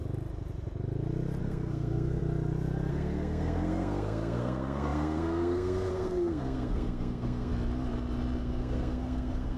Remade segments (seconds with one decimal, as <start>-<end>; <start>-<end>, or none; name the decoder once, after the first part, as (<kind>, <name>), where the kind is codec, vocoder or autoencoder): 1.4-2.2 (codec, SNAC); 2.9-7.5; 8.4-9.6